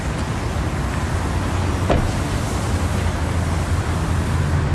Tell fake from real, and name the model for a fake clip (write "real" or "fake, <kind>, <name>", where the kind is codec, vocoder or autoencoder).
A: real